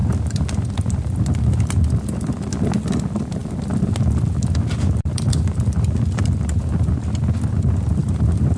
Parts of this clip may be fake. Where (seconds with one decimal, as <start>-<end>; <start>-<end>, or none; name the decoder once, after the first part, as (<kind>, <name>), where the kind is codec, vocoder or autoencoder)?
0.0-3.0 (vocoder, BigVGAN v2); 3.4-6.9; 8.0-8.6